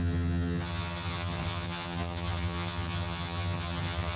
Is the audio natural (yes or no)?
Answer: no